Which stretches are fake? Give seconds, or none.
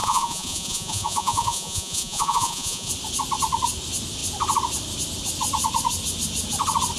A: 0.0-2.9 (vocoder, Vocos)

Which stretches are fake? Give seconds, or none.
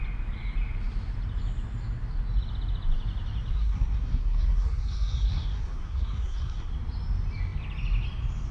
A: 3.5-6.7 (codec, SNAC)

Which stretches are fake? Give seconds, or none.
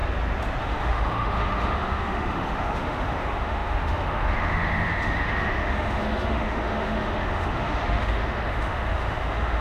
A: 0.6-9.6 (autoencoder, DAC-VAE)